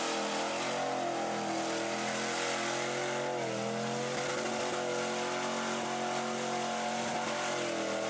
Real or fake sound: real